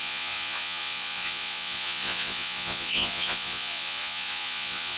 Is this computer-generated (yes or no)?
yes